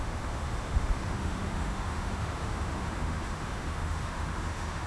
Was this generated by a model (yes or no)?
yes